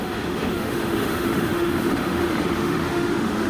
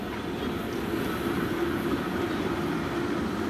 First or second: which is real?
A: second